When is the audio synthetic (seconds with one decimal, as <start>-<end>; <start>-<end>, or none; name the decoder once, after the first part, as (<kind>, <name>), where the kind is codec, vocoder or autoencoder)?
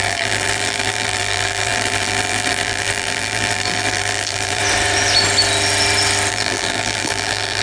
0.0-4.6 (vocoder, BigVGAN v2); 6.3-7.6